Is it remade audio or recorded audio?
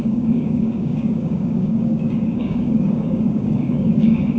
remade